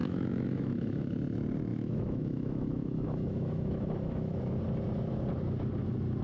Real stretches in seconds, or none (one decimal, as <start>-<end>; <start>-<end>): 1.1-1.7; 4.6-6.2

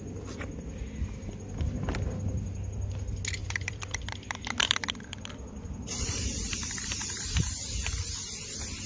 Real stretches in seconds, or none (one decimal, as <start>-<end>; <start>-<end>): 0.0-3.4; 8.5-8.9

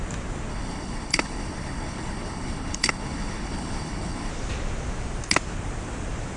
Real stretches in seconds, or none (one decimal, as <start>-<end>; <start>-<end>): 0.0-0.5; 4.3-6.4

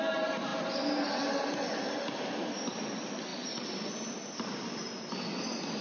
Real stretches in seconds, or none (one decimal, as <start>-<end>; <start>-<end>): 0.0-3.3; 3.9-5.8